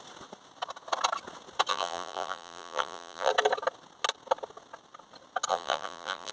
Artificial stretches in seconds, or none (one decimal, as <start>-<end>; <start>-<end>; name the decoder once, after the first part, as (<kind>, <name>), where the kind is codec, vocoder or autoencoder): 1.7-3.3 (vocoder, BigVGAN v2); 5.5-6.3